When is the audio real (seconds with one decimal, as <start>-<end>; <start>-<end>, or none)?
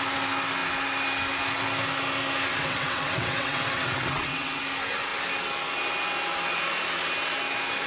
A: 0.0-2.5; 4.6-7.9